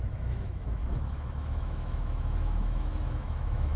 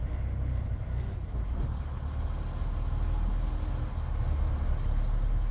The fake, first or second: first